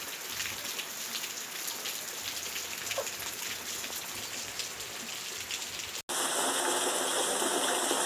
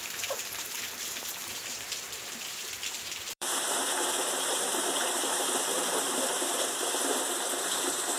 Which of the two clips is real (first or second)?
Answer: first